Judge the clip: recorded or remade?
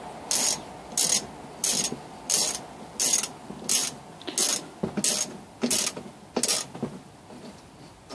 recorded